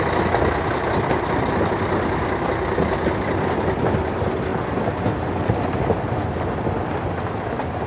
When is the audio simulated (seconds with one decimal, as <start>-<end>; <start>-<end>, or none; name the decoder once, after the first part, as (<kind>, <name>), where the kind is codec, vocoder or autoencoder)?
none